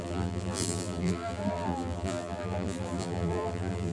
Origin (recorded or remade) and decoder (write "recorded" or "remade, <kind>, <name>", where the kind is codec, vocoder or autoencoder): remade, vocoder, BigVGAN v2